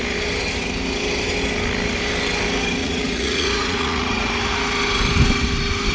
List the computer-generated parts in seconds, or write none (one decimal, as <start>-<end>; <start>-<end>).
2.8-4.3